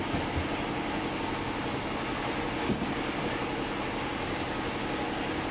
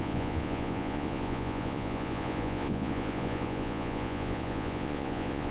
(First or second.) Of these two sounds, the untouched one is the first